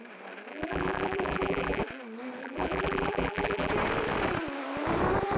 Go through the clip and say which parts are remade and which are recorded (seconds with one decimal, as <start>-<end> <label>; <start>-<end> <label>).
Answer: 0.0-0.5 recorded; 0.5-1.8 remade; 1.8-2.4 recorded; 2.4-3.7 remade; 3.7-5.4 recorded